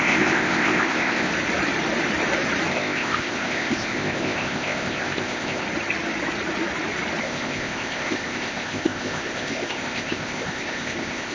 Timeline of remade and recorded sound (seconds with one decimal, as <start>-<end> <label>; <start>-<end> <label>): 0.0-1.3 remade; 1.3-2.7 recorded; 2.7-5.6 remade; 5.6-7.2 recorded; 7.2-11.3 remade